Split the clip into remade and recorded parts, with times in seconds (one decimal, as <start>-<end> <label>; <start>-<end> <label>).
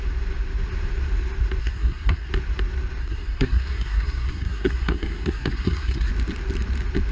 0.0-1.6 recorded; 1.6-2.3 remade; 2.3-3.0 recorded; 3.0-6.1 remade; 6.1-7.1 recorded